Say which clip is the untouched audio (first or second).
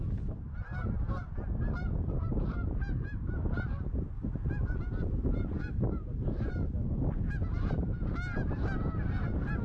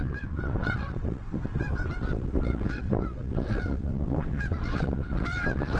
first